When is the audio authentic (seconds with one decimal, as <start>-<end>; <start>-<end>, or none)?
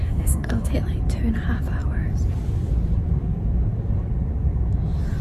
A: 0.7-5.2